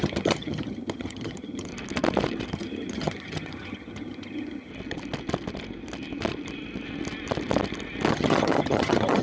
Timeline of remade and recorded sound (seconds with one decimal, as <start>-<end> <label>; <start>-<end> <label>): 0.0-1.7 remade; 1.7-2.5 recorded; 2.5-4.7 remade; 4.7-8.1 recorded; 8.1-9.2 remade